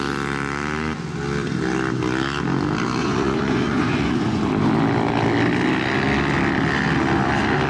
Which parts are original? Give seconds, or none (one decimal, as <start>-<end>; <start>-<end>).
0.0-3.0; 4.4-7.7